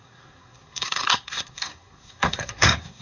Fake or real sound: fake